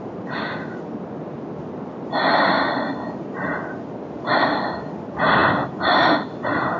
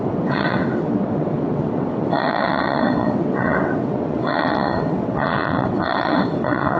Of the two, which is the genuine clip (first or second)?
first